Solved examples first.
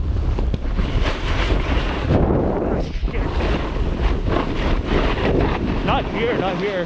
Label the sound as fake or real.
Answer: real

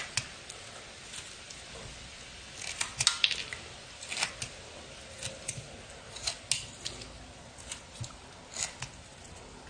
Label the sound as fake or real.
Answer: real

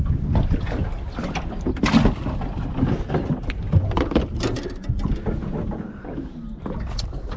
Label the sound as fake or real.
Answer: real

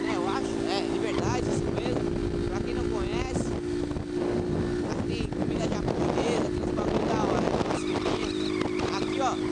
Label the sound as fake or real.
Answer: real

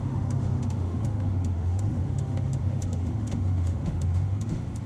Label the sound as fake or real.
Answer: fake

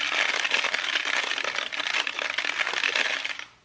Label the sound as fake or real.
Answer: real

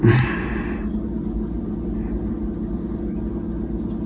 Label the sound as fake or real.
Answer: real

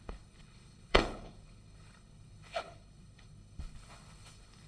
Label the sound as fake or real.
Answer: fake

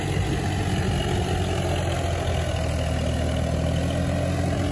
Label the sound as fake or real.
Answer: real